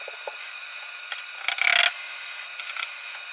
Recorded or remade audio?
recorded